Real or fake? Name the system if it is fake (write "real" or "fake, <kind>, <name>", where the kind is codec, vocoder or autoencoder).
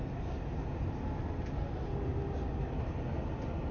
real